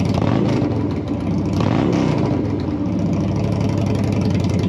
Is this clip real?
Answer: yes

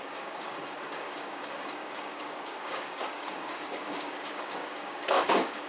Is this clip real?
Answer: no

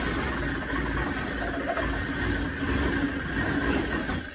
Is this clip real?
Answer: yes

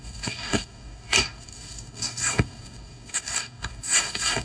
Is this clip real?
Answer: no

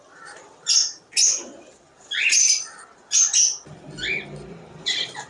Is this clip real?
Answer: yes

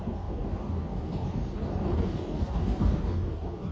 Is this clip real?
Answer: no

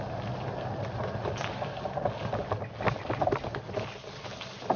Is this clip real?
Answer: yes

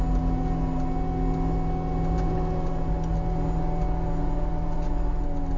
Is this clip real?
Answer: yes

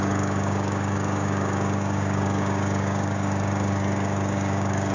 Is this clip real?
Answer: no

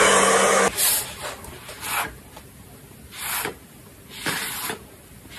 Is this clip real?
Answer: yes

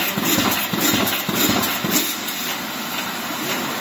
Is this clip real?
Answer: yes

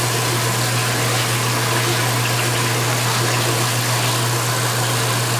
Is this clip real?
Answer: yes